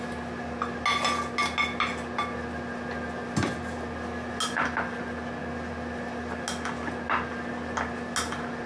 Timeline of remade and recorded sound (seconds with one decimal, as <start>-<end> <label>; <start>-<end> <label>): 0.0-8.7 recorded